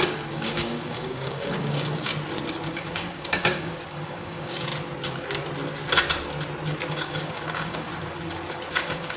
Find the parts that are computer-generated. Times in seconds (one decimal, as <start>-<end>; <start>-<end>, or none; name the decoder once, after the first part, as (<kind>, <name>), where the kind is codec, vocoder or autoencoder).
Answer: 0.0-2.1 (codec, DAC); 2.7-4.7; 6.9-7.9; 8.7-9.2